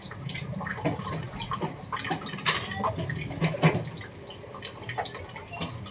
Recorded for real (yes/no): yes